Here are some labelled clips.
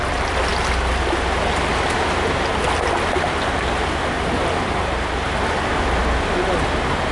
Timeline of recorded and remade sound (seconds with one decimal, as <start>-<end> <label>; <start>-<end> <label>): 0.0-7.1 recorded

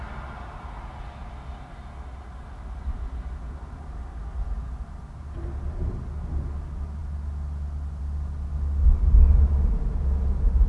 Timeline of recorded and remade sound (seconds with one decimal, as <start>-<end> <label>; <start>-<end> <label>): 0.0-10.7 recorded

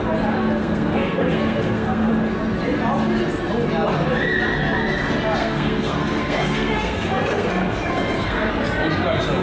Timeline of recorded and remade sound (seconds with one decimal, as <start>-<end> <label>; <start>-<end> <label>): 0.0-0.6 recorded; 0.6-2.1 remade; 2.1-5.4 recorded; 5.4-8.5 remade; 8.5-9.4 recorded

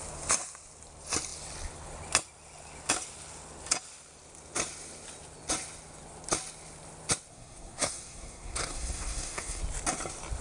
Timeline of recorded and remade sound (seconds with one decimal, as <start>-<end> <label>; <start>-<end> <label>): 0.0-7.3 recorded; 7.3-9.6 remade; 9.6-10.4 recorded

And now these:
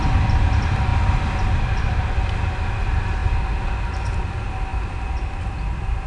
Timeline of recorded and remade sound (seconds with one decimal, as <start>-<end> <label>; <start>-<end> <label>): 0.0-6.1 recorded

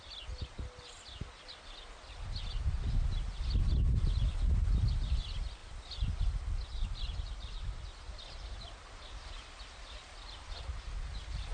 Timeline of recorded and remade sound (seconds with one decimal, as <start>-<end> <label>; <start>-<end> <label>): 0.0-11.5 recorded

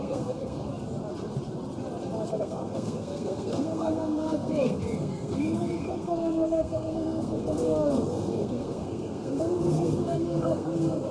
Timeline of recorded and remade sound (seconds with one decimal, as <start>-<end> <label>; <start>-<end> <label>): 0.0-0.7 remade; 0.7-2.3 recorded; 2.3-11.1 remade